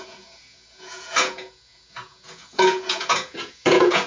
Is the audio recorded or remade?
remade